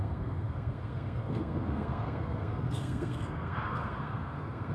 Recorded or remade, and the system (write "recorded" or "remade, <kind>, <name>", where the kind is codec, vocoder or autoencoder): remade, codec, SNAC